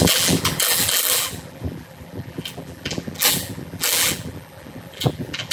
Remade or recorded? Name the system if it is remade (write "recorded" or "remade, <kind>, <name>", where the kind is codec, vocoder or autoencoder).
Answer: remade, vocoder, BigVGAN v2